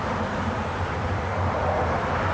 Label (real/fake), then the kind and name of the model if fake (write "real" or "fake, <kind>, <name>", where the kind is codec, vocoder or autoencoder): fake, vocoder, BigVGAN v2